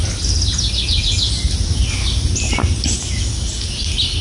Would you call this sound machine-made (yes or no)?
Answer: no